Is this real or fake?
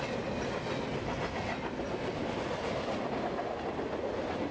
real